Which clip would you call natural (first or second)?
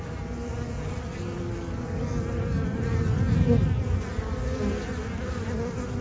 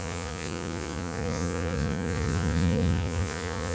first